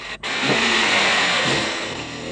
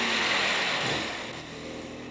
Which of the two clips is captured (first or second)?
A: second